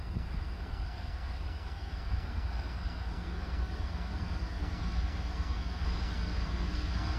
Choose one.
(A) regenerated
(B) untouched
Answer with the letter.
A